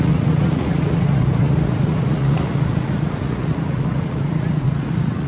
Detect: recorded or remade remade